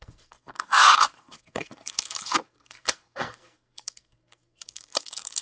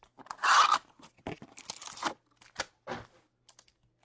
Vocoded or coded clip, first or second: first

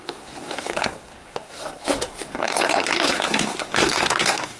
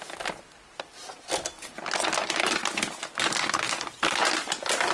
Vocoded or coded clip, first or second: first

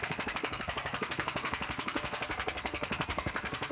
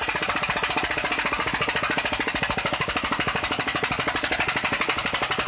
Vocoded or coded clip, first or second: first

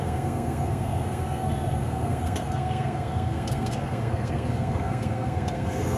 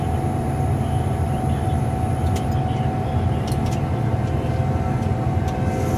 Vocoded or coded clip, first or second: first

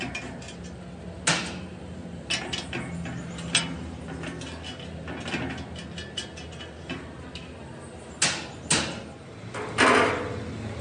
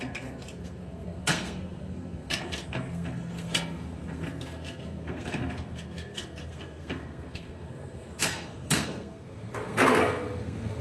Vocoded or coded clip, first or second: second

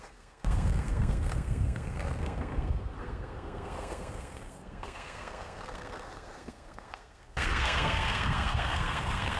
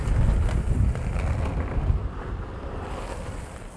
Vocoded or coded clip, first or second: first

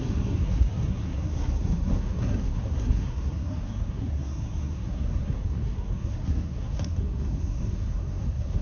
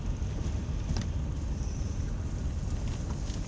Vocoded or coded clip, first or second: first